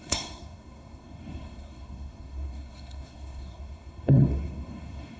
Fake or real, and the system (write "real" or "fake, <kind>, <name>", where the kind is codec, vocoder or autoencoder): fake, codec, SNAC